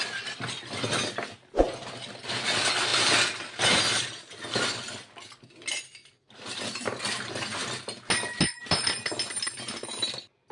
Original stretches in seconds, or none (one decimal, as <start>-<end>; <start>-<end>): 0.0-10.5